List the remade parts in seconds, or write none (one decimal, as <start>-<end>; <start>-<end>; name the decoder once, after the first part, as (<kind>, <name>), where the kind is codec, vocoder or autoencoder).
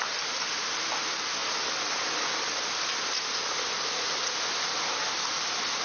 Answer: none